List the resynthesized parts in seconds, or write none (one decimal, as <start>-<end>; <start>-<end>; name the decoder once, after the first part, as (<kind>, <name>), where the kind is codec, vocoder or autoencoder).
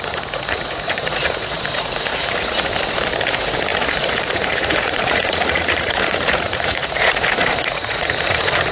0.0-2.7 (vocoder, Vocos); 3.3-8.7